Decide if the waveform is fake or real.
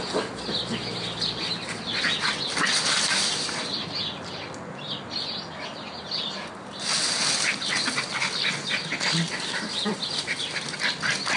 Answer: real